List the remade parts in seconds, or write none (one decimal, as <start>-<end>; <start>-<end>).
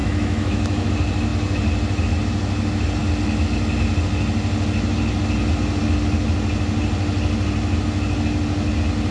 0.0-0.9